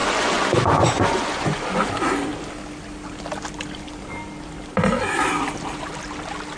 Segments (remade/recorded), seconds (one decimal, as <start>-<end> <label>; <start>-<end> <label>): 0.0-1.9 remade; 1.9-6.6 recorded